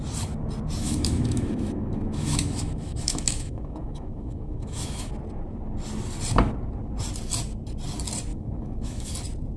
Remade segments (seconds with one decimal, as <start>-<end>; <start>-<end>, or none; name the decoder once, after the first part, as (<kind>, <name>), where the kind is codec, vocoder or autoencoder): 0.8-5.1 (autoencoder, DAC-VAE); 8.3-9.1

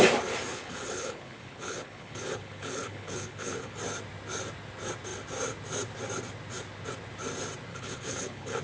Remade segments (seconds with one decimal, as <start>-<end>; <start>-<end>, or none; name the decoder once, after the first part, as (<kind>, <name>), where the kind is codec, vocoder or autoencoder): 0.5-3.8 (codec, HILCodec); 7.7-8.6

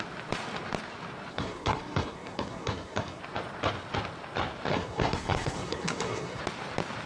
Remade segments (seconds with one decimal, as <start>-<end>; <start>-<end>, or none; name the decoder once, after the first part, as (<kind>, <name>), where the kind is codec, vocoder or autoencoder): 1.3-3.2 (codec, SNAC); 4.7-6.4

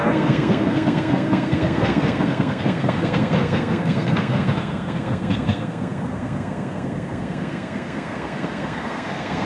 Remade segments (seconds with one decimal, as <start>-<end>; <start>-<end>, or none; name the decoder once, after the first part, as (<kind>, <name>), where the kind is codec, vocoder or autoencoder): 0.0-9.5 (codec, SNAC)

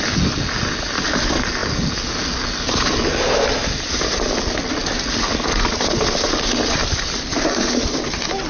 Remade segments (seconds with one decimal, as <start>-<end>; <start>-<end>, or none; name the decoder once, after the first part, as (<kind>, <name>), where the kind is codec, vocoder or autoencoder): none